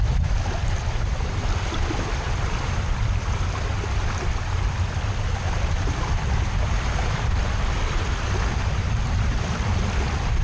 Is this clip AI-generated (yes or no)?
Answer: yes